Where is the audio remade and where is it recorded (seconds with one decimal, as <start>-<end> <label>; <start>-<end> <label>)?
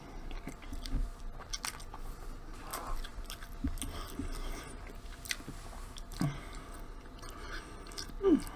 0.0-8.6 recorded